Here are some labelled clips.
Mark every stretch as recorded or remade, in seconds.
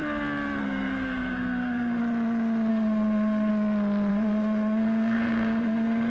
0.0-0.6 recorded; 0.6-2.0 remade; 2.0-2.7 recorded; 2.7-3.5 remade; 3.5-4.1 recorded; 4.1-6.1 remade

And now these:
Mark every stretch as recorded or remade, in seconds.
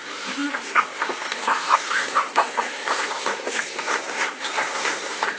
0.0-5.4 remade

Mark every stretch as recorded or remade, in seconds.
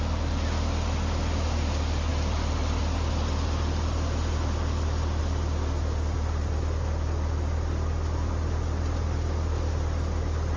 0.0-10.6 recorded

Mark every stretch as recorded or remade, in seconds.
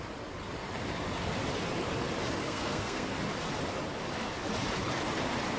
0.0-2.4 recorded; 2.4-3.2 remade; 3.2-5.6 recorded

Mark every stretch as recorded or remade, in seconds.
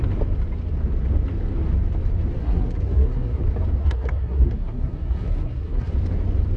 0.0-2.4 recorded; 2.4-3.4 remade; 3.4-3.8 recorded; 3.8-5.9 remade; 5.9-6.6 recorded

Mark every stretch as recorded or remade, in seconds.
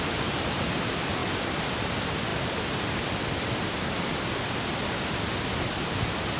0.0-6.4 recorded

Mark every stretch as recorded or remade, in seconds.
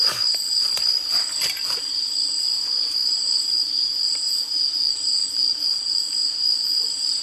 0.0-7.2 recorded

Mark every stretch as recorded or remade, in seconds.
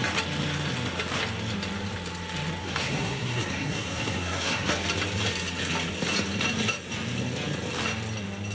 0.0-2.6 recorded; 2.6-4.7 remade; 4.7-8.5 recorded